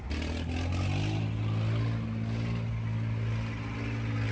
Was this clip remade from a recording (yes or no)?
no